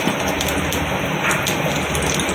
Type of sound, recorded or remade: recorded